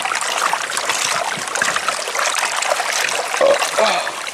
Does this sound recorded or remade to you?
recorded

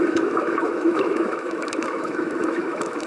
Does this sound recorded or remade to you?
remade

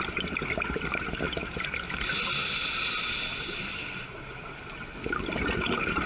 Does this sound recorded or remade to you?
recorded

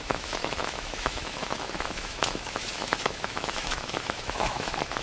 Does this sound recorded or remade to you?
remade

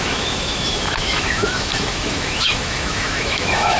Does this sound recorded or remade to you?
remade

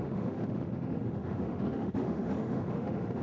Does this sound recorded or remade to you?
remade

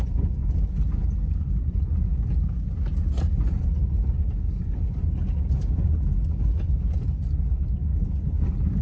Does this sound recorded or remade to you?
recorded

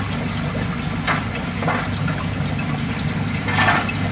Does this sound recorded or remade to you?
recorded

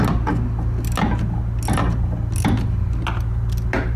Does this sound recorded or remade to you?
recorded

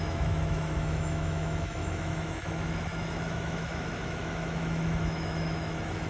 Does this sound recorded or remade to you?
remade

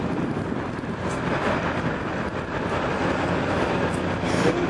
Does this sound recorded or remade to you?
recorded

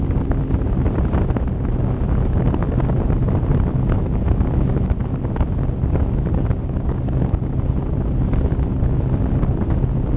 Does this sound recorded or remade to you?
recorded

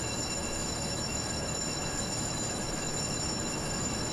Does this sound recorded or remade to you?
remade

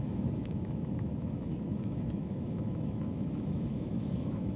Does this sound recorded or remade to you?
remade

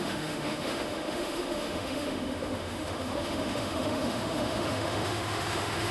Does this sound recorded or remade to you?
remade